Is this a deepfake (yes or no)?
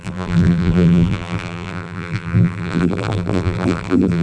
yes